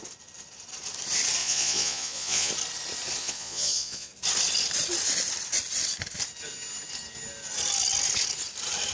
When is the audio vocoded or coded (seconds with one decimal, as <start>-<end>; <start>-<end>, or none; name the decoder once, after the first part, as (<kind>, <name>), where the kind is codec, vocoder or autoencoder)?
1.4-2.5 (vocoder, Vocos); 3.2-4.1